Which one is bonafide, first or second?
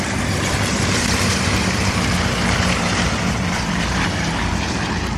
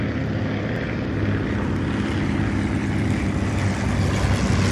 second